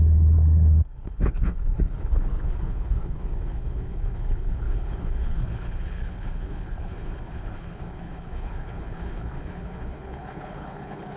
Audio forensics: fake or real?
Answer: fake